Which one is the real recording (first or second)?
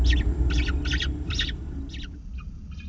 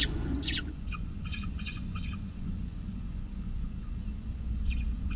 first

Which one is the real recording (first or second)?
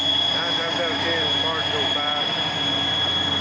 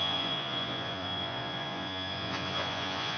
first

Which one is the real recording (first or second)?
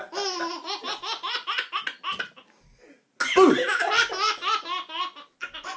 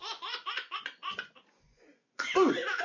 first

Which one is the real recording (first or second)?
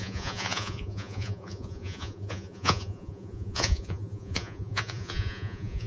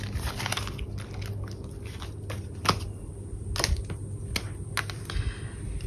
second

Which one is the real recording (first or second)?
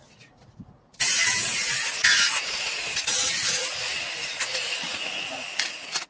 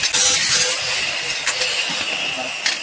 second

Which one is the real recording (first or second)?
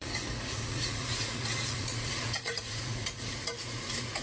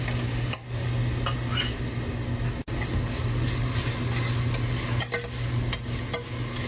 second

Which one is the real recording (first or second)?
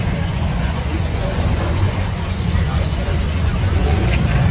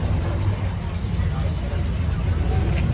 second